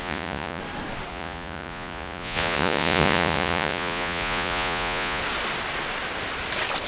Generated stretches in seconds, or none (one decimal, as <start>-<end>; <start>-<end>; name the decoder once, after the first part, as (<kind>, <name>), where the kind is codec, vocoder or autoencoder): 0.0-0.6 (vocoder, Vocos); 1.1-5.2